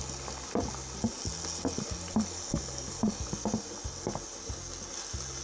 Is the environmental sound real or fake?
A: real